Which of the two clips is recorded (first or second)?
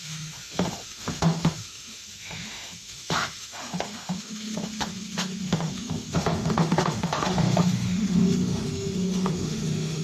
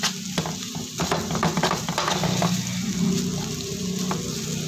second